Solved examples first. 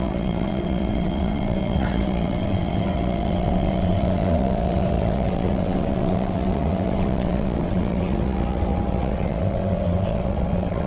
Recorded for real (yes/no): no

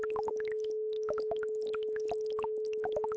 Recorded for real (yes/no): yes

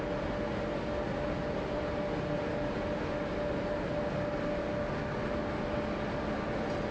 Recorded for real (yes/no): yes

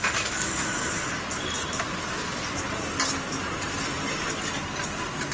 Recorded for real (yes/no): yes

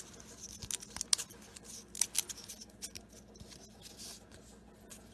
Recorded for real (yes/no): yes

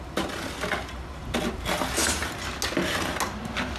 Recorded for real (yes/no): yes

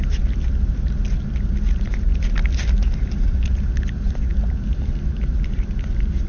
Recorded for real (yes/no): yes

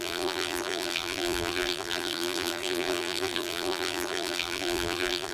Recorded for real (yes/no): no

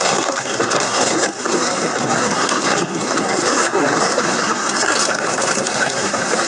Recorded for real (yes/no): no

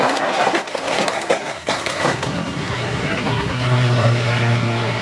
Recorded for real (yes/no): no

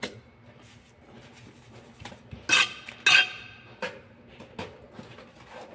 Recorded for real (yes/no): yes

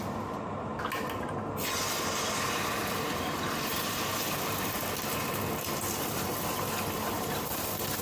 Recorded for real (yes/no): yes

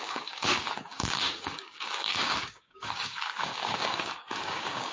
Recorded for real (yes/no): no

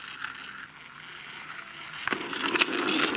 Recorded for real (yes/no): yes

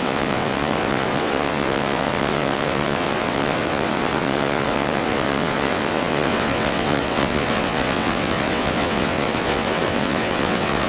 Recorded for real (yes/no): no